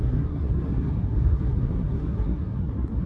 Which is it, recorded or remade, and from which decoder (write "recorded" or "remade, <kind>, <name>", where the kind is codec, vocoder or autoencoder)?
remade, codec, SNAC